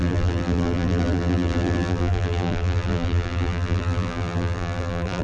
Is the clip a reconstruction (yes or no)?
yes